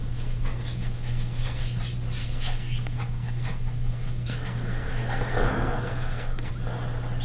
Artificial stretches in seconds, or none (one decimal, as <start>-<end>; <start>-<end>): 0.0-1.8; 2.2-6.5